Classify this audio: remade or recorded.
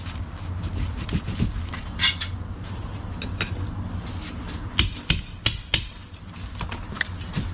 recorded